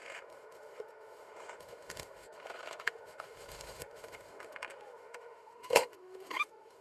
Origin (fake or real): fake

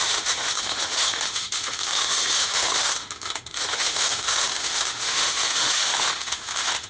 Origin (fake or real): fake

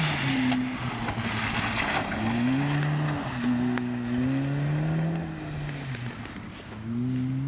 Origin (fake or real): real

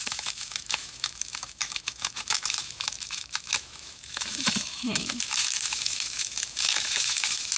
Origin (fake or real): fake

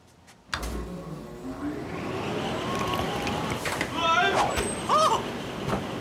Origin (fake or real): real